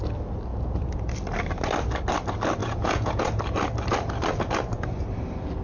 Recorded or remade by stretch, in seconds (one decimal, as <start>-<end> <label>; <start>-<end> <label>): 0.0-0.5 recorded; 0.5-1.1 remade; 1.1-2.6 recorded; 2.6-3.2 remade; 3.2-5.6 recorded